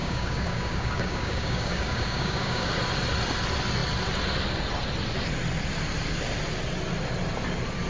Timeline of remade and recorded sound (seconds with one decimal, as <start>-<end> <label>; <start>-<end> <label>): 0.0-2.7 remade; 2.7-7.9 recorded